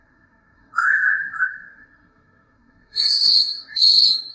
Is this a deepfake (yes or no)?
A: yes